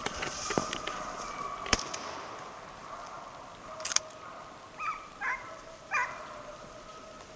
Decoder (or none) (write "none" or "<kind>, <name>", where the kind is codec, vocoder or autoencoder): none